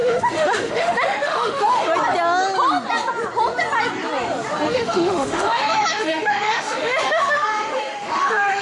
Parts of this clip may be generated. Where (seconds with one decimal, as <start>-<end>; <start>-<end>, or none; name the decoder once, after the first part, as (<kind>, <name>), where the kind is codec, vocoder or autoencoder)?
0.0-1.9 (autoencoder, DAC-VAE); 4.7-8.6